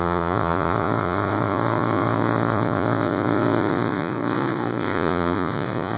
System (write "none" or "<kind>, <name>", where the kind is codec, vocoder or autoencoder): vocoder, Vocos